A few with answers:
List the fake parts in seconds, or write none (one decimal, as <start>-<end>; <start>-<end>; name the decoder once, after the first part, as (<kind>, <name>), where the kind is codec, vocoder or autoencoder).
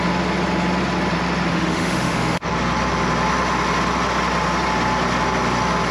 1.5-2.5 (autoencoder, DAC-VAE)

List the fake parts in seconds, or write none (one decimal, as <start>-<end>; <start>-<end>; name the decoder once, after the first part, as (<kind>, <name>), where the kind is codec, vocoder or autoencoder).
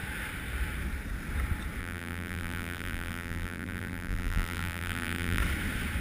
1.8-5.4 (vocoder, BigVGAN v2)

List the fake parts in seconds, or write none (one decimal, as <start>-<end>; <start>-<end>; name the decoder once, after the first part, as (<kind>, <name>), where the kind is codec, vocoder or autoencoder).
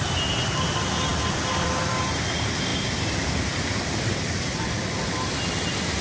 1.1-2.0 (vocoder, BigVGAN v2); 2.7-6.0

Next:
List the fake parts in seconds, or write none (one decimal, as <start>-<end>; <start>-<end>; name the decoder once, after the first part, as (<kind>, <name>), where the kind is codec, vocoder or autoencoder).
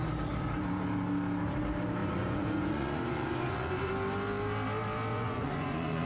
2.0-3.9 (vocoder, Vocos); 5.1-6.1